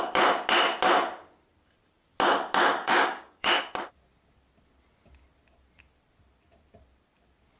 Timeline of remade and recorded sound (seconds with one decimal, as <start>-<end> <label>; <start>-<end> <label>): 0.0-2.8 recorded; 2.8-3.6 remade; 3.6-7.6 recorded